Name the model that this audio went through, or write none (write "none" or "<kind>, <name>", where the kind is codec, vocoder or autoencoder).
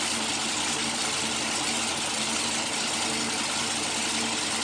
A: none